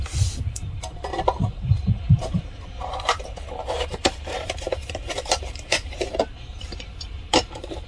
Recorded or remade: remade